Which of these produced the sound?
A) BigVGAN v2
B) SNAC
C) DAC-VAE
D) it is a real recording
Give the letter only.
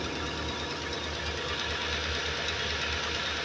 D